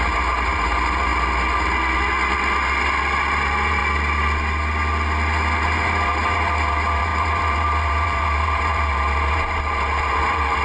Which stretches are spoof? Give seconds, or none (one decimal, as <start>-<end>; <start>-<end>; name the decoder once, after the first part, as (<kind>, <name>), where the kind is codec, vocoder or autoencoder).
0.0-1.1 (vocoder, BigVGAN v2); 3.2-3.8; 5.6-10.6